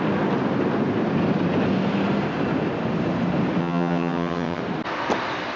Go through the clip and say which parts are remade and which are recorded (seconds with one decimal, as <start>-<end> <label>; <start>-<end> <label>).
0.0-3.6 recorded; 3.6-4.6 remade; 4.6-5.6 recorded